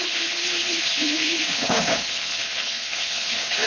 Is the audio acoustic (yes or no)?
no